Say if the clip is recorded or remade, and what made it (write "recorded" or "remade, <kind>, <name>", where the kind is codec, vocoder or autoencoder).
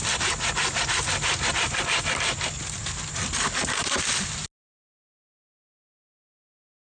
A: recorded